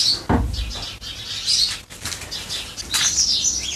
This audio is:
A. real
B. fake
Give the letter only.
A